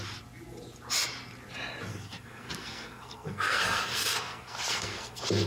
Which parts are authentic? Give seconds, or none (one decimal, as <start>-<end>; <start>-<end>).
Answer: 0.0-1.9